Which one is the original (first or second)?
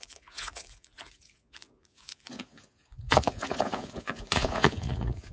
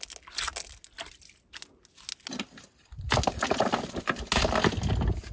second